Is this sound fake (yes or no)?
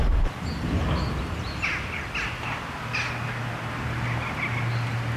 no